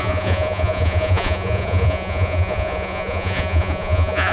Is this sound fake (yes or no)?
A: yes